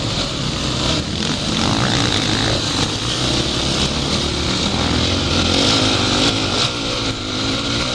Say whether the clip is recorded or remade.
recorded